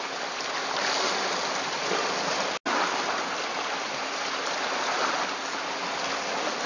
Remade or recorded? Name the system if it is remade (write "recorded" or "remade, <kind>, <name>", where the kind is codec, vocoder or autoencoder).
recorded